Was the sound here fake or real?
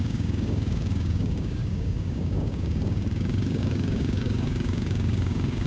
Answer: fake